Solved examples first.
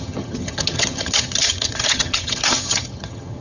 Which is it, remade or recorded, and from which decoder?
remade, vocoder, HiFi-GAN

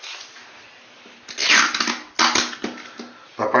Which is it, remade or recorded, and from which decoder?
recorded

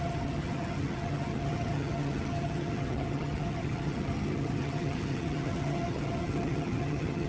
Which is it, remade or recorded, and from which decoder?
remade, vocoder, HiFi-GAN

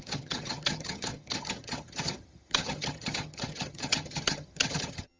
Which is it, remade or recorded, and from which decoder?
remade, vocoder, HiFi-GAN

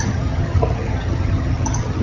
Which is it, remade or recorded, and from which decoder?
remade, vocoder, HiFi-GAN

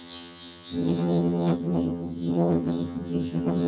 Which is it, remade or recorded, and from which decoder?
remade, vocoder, HiFi-GAN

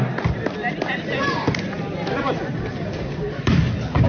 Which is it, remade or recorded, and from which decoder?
recorded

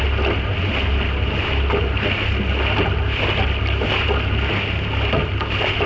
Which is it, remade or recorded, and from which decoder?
recorded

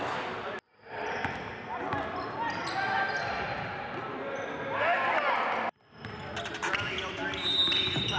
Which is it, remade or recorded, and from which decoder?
recorded